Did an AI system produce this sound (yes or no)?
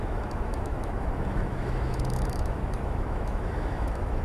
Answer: yes